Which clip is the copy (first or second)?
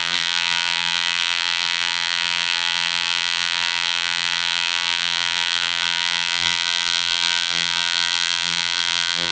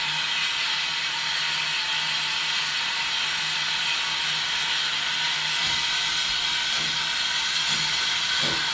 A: first